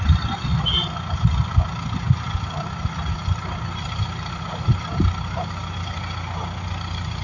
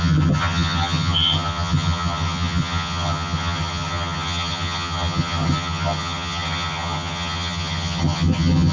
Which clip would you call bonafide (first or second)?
first